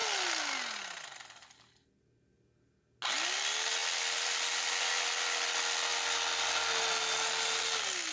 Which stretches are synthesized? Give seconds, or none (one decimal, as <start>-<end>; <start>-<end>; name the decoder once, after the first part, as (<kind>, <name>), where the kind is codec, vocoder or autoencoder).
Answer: none